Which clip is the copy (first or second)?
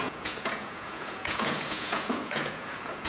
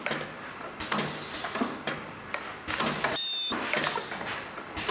first